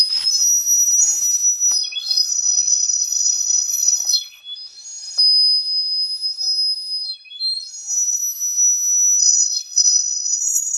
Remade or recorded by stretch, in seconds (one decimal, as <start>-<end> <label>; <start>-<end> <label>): 0.0-2.0 recorded; 2.0-4.4 remade; 4.4-9.2 recorded; 9.2-10.8 remade